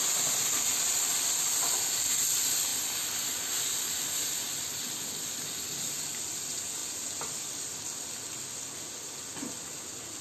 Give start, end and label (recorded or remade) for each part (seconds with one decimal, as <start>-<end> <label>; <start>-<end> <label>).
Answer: 0.0-10.2 recorded